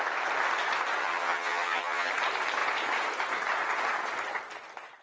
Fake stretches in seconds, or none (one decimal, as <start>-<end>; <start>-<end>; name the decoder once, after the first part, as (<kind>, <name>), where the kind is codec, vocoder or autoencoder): 1.0-2.1 (vocoder, HiFi-GAN)